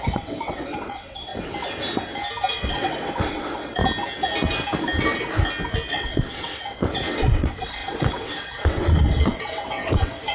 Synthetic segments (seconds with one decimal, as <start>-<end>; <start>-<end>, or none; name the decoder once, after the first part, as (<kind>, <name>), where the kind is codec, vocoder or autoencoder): 0.0-1.3 (vocoder, WaveNeXt); 2.5-3.8; 5.9-10.3